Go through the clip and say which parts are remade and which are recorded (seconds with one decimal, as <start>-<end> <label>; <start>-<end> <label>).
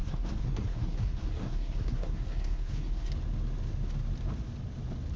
0.0-3.1 remade; 3.1-5.2 recorded